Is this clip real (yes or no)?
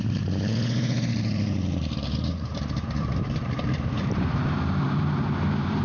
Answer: no